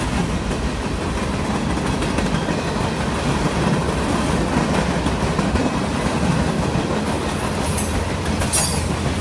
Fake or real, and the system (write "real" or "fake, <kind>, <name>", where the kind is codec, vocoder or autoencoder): real